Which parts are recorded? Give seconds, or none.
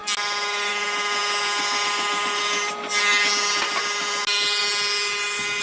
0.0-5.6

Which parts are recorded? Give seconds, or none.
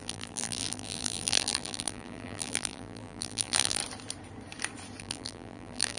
3.8-5.0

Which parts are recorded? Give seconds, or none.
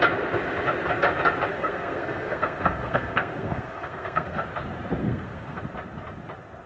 0.0-1.5; 4.4-5.0; 5.6-6.7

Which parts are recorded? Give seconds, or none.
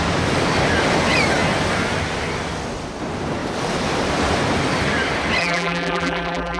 0.0-5.4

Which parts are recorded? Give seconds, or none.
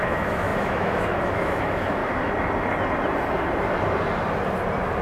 2.0-5.0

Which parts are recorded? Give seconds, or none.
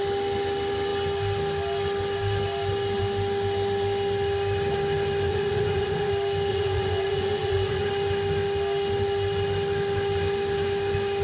0.0-5.3; 6.1-6.5; 7.9-11.2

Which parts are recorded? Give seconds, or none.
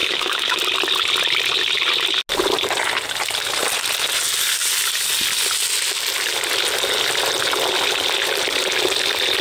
0.6-9.4